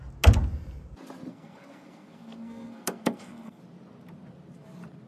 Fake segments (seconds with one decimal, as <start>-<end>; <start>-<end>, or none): 1.3-3.6